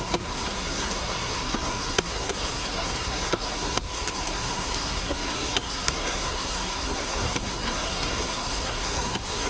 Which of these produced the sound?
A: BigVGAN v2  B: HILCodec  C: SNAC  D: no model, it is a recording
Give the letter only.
C